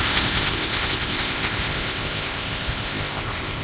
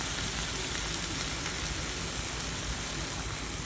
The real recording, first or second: second